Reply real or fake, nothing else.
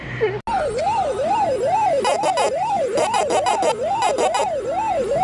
real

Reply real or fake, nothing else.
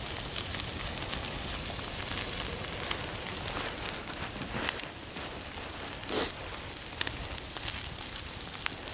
real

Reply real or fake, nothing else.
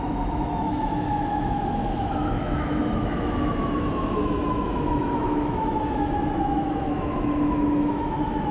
fake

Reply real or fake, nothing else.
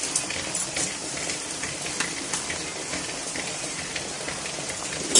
fake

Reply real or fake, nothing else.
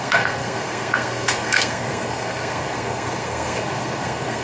fake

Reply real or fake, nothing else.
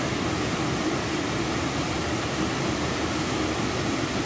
real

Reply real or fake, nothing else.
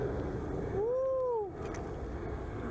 real